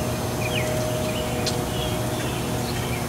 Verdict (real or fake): real